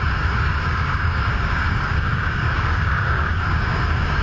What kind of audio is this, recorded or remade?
remade